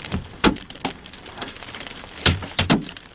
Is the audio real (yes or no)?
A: no